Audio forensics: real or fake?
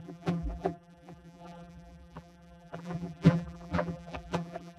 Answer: fake